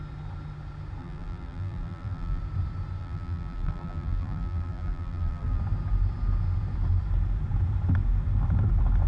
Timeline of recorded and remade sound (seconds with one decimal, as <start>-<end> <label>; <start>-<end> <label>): 0.0-1.0 recorded; 1.0-2.4 remade; 2.4-3.0 recorded; 3.0-5.6 remade; 5.6-9.1 recorded